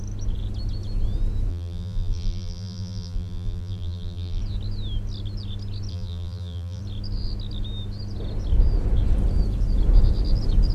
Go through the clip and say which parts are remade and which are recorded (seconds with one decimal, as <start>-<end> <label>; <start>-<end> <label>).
0.0-1.5 recorded; 1.5-4.4 remade; 4.4-5.9 recorded; 5.9-6.8 remade; 6.8-10.7 recorded

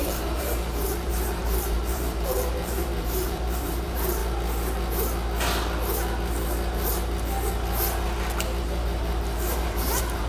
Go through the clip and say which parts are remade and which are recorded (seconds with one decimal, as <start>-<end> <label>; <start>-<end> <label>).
0.0-4.2 remade; 4.2-8.6 recorded; 8.6-10.3 remade

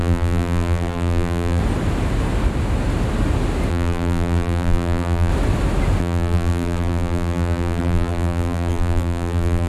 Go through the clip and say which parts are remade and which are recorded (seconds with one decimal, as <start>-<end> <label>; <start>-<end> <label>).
0.0-1.6 remade; 1.6-3.7 recorded; 3.7-5.3 remade; 5.3-6.0 recorded; 6.0-9.7 remade

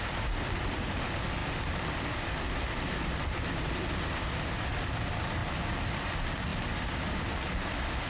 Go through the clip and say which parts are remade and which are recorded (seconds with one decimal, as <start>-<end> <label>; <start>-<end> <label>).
0.0-1.4 recorded; 1.4-2.2 remade; 2.2-8.1 recorded

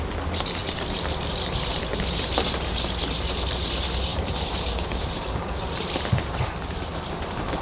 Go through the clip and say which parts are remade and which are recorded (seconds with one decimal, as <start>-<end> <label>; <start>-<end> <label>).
0.0-1.9 recorded; 1.9-2.8 remade; 2.8-4.1 recorded; 4.1-5.2 remade; 5.2-7.6 recorded

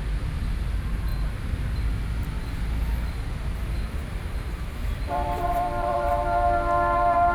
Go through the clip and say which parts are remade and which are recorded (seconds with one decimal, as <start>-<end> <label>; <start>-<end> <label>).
0.0-4.9 recorded; 4.9-6.1 remade; 6.1-7.3 recorded

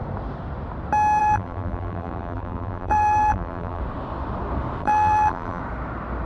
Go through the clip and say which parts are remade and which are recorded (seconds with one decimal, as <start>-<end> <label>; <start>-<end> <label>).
0.0-1.2 recorded; 1.2-3.8 remade; 3.8-4.8 recorded; 4.8-5.6 remade; 5.6-6.2 recorded